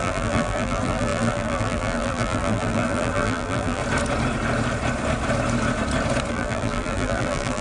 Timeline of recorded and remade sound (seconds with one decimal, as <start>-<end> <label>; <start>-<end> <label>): 0.0-3.8 remade; 3.8-6.3 recorded; 6.3-7.6 remade